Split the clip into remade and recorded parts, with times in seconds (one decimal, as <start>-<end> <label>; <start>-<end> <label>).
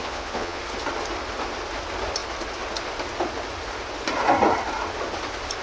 0.0-0.6 remade; 0.6-5.6 recorded